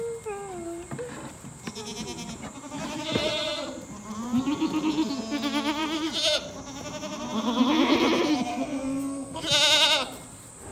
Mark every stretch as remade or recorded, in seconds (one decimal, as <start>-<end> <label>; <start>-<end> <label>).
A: 0.0-8.5 recorded; 8.5-9.4 remade; 9.4-10.7 recorded